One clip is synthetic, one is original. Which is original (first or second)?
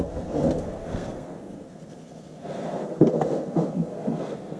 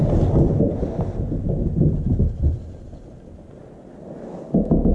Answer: second